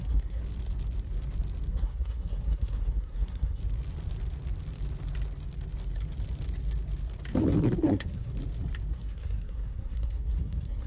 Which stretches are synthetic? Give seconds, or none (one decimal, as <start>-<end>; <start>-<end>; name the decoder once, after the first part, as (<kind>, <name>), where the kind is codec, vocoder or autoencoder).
0.0-0.4 (codec, SNAC); 1.7-3.6; 7.8-8.3; 8.9-10.9